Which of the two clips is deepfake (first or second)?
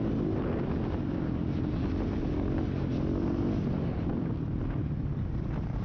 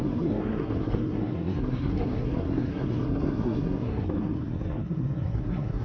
second